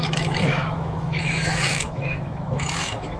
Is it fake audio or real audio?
fake